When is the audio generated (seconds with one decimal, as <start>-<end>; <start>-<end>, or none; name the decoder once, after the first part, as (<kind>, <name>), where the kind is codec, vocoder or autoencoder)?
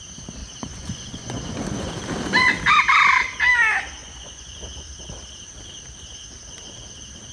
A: 0.4-1.9 (vocoder, Vocos); 4.0-4.6